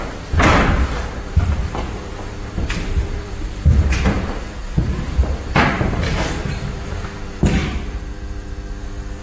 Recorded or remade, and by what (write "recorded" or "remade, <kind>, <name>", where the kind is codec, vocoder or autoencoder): remade, vocoder, BigVGAN v2